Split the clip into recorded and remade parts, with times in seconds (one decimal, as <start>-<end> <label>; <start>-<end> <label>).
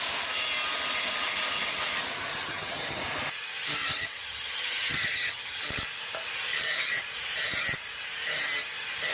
0.0-2.3 recorded; 2.3-3.0 remade; 3.0-3.8 recorded; 3.8-5.6 remade; 5.6-9.1 recorded